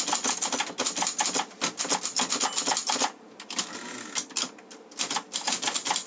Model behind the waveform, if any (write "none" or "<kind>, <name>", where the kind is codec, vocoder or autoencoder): none